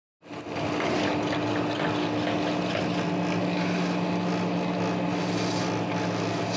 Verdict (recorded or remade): recorded